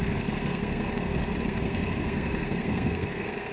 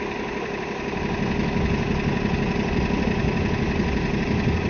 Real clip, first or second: second